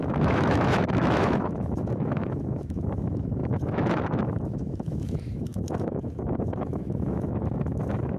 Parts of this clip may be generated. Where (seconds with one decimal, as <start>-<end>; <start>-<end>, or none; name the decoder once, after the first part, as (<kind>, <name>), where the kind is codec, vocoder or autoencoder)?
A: 0.0-8.2 (autoencoder, DAC-VAE)